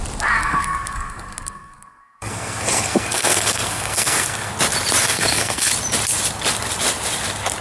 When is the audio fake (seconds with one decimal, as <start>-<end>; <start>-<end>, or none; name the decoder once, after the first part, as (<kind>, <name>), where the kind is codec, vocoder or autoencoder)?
0.4-4.5 (codec, SNAC); 5.0-5.7